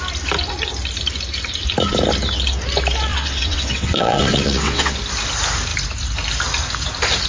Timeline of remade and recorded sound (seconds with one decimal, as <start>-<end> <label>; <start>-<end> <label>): 0.0-3.1 recorded; 3.1-5.0 remade; 5.0-7.3 recorded